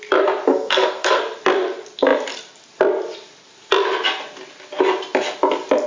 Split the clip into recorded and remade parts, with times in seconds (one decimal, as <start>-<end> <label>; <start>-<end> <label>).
0.0-0.5 recorded; 0.5-1.2 remade; 1.2-5.9 recorded